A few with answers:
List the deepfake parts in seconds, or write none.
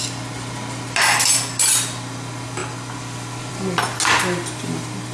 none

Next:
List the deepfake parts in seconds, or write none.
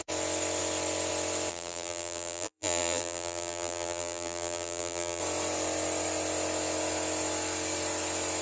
1.5-5.2 (vocoder, BigVGAN v2)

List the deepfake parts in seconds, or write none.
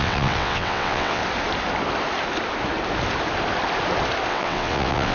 0.0-1.2 (vocoder, WaveNeXt); 4.3-5.1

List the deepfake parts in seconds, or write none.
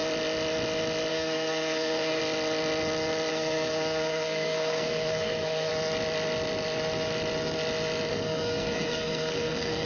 1.1-2.2 (codec, SNAC); 3.3-5.7; 8.1-9.9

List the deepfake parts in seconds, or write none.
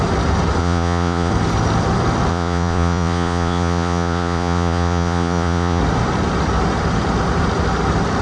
0.6-1.3 (vocoder, Vocos); 2.3-5.8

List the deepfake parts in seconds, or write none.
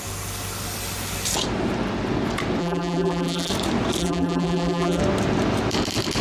2.6-3.5 (vocoder, BigVGAN v2); 4.0-5.0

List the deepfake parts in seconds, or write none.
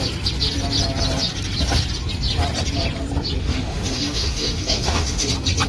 3.4-5.3 (autoencoder, DAC-VAE)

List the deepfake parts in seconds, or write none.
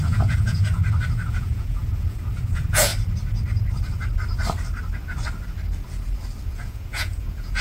0.0-0.8 (vocoder, Vocos); 1.3-2.9; 6.5-7.6